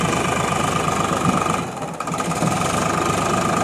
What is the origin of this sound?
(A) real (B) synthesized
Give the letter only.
A